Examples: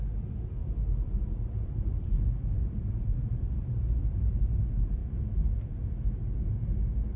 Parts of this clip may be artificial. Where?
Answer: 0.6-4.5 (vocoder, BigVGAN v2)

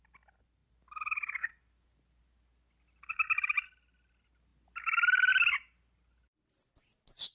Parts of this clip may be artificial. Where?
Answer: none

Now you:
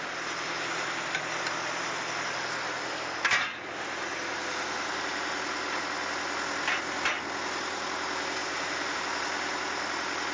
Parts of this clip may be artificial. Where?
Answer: 8.4-9.0 (vocoder, BigVGAN v2)

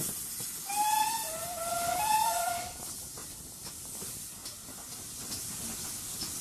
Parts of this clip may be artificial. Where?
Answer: 0.7-2.7 (vocoder, BigVGAN v2); 3.2-3.7

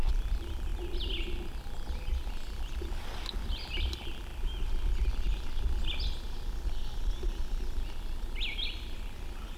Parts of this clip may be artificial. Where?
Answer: 0.0-0.7 (vocoder, BigVGAN v2); 2.0-4.3; 7.3-9.6